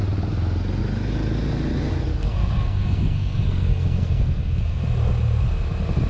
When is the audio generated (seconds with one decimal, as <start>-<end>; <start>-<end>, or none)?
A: 2.1-4.8